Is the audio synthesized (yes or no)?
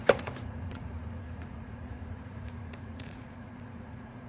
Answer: yes